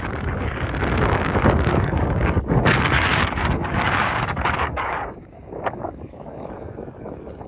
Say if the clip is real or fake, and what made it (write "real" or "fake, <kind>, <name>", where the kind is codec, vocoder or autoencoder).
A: fake, codec, DAC